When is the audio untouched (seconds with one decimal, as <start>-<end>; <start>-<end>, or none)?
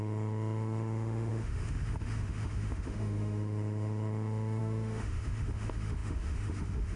none